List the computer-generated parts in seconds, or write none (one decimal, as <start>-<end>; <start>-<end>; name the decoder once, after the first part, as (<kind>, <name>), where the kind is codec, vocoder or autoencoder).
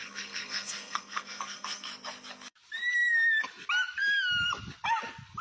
0.0-1.9 (codec, SNAC)